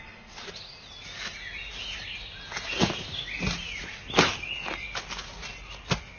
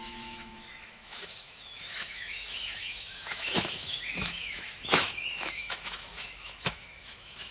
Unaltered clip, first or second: first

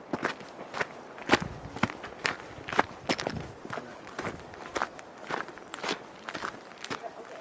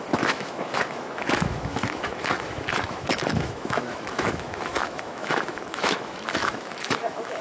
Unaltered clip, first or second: first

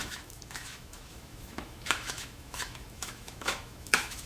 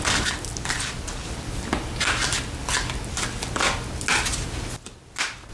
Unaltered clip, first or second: second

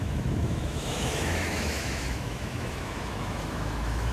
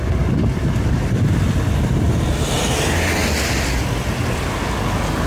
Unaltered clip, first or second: second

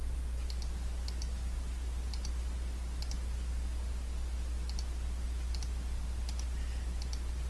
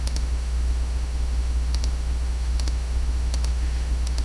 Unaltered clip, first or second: first